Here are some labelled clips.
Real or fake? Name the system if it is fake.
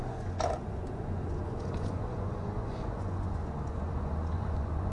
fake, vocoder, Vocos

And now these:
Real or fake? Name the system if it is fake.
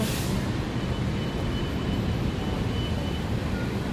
real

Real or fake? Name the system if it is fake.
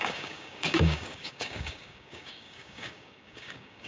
fake, codec, DAC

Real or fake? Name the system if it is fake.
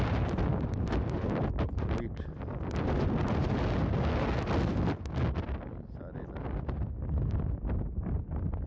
real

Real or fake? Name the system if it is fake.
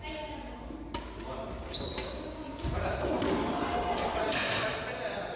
real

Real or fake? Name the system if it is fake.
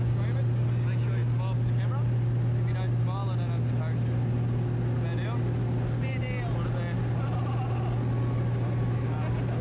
real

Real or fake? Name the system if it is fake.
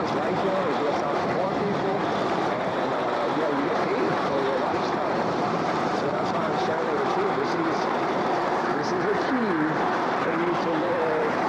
fake, vocoder, BigVGAN v2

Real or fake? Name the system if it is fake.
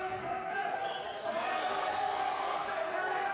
fake, codec, SNAC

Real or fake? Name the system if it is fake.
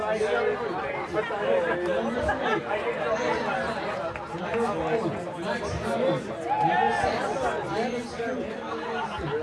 real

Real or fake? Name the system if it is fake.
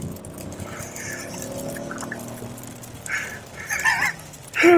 real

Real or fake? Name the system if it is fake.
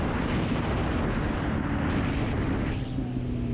real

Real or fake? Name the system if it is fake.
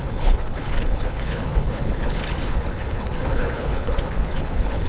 fake, codec, HILCodec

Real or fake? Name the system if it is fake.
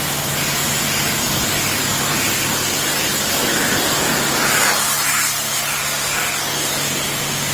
real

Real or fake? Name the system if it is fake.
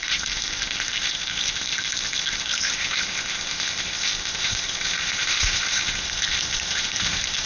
fake, codec, ZipCodec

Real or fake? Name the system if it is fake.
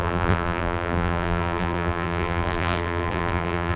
fake, vocoder, BigVGAN v2